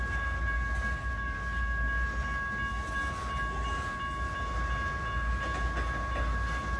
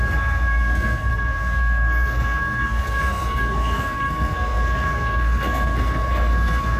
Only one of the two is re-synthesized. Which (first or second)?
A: second